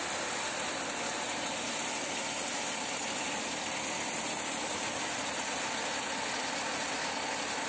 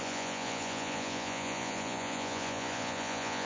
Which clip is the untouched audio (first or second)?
first